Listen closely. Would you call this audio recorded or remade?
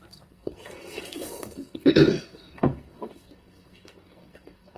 remade